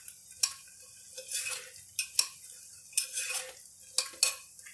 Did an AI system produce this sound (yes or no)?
no